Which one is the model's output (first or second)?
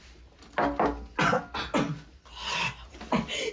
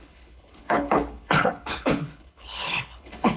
second